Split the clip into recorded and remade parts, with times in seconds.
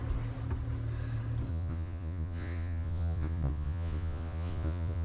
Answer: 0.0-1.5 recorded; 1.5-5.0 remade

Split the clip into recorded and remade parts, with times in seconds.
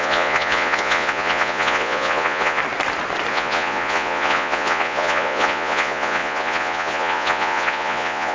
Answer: 0.0-2.6 remade; 2.6-3.3 recorded; 3.3-8.3 remade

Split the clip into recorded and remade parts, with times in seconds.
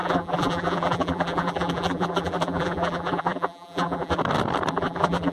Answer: 0.0-4.2 remade; 4.2-4.7 recorded; 4.7-5.3 remade